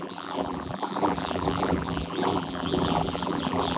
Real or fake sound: fake